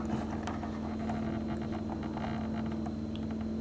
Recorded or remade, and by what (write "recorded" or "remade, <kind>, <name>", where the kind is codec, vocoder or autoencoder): recorded